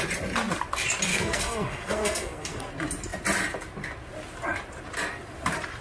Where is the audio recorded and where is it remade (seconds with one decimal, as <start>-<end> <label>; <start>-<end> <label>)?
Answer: 0.0-1.1 recorded; 1.1-2.6 remade; 2.6-5.8 recorded